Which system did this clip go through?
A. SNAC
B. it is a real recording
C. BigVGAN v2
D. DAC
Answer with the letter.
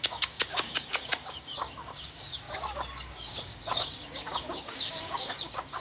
D